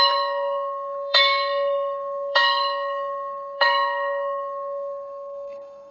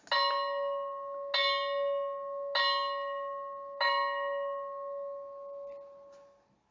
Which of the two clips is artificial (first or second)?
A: first